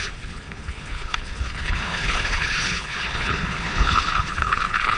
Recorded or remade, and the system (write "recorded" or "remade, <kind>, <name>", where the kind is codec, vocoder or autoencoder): remade, codec, HILCodec